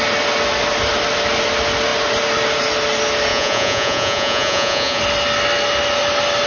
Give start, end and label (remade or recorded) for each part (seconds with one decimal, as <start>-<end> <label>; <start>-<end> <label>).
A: 0.0-3.3 recorded; 3.3-5.0 remade; 5.0-6.5 recorded